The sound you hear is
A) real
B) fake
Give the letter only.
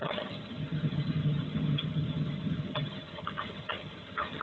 B